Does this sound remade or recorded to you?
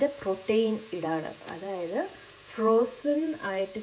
remade